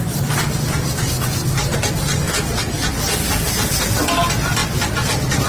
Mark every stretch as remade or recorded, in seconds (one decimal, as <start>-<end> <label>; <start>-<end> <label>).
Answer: 0.0-5.5 recorded